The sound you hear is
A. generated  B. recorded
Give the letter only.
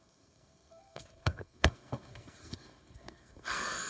A